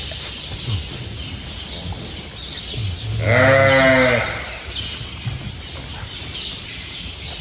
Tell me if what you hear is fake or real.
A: real